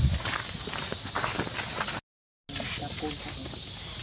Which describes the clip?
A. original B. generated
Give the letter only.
A